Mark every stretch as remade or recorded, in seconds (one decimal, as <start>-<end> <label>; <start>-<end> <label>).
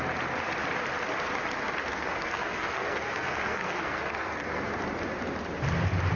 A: 0.0-1.8 recorded; 1.8-4.7 remade; 4.7-6.2 recorded